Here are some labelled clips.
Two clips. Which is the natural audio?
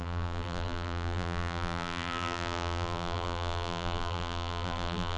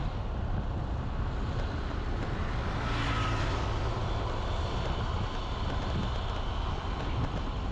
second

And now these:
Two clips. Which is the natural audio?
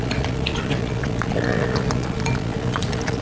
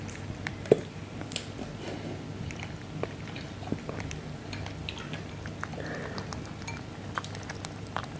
second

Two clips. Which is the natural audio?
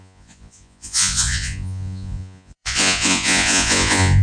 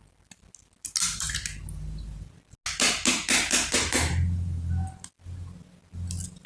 second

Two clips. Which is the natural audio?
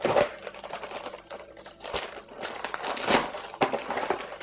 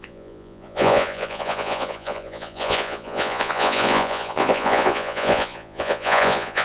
first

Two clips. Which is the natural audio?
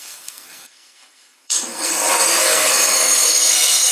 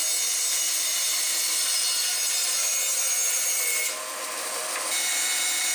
second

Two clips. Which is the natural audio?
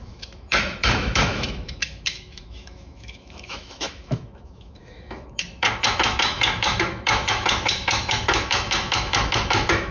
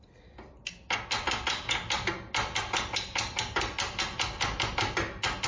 second